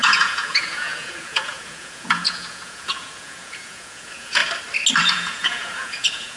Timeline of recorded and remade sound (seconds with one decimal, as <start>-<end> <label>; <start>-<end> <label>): 0.0-4.4 remade; 4.4-5.0 recorded; 5.0-6.4 remade